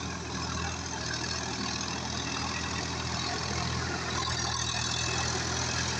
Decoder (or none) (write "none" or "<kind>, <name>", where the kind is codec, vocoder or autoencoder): none